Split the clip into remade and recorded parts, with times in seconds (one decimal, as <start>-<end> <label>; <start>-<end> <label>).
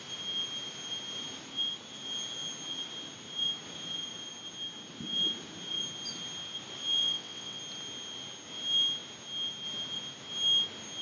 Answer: 0.0-7.0 recorded; 7.0-7.6 remade; 7.6-11.0 recorded